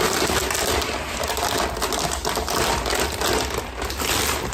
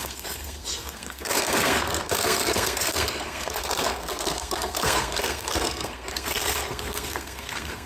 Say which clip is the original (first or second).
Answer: first